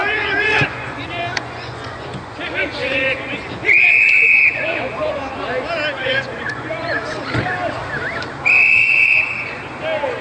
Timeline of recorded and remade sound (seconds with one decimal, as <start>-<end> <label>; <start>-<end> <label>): 0.0-4.9 remade; 4.9-6.0 recorded; 6.0-6.9 remade; 6.9-8.7 recorded; 8.7-9.6 remade; 9.6-10.2 recorded